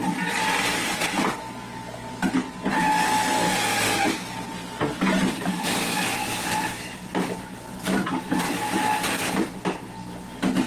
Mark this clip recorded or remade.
recorded